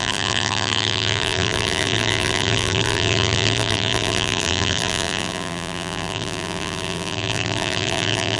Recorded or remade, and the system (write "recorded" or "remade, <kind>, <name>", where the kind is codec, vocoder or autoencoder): remade, vocoder, BigVGAN v2